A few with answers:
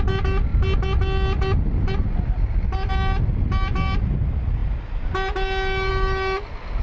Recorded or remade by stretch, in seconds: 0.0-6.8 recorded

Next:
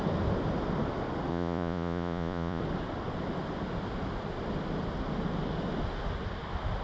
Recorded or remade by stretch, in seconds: 0.0-1.3 recorded; 1.3-2.6 remade; 2.6-6.8 recorded

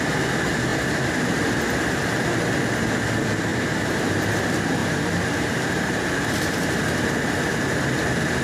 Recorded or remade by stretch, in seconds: 0.0-3.5 recorded; 3.5-4.3 remade; 4.3-4.8 recorded; 4.8-6.6 remade; 6.6-8.4 recorded

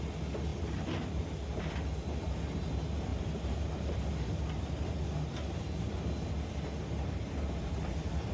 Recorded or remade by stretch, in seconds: 0.0-8.3 recorded

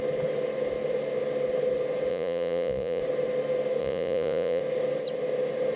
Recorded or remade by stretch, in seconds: 0.0-2.1 recorded; 2.1-3.0 remade; 3.0-3.8 recorded; 3.8-4.6 remade; 4.6-5.8 recorded

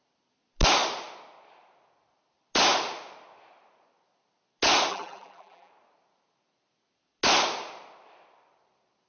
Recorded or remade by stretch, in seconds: 0.0-4.9 recorded; 4.9-5.7 remade; 5.7-9.1 recorded

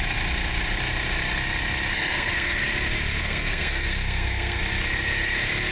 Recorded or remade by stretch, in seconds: 0.0-1.9 recorded; 1.9-2.6 remade; 2.6-3.2 recorded; 3.2-4.6 remade; 4.6-5.7 recorded